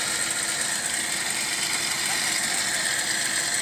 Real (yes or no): yes